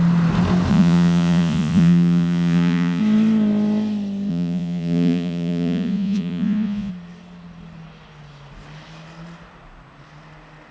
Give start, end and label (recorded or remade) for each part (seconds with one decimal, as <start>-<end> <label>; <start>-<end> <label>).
0.0-0.7 recorded; 0.7-3.0 remade; 3.0-4.3 recorded; 4.3-6.9 remade; 6.9-10.7 recorded